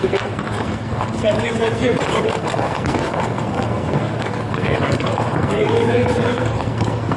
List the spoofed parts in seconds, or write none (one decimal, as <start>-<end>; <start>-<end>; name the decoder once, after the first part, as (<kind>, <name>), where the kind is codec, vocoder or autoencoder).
0.0-7.2 (codec, SNAC)